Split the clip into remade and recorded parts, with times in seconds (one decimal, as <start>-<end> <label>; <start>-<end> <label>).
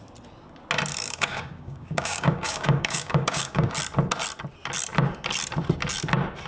0.0-0.9 recorded; 0.9-3.7 remade; 3.7-6.5 recorded